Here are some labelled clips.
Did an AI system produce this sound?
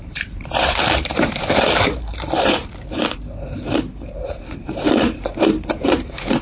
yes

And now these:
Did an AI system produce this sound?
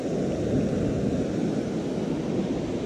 no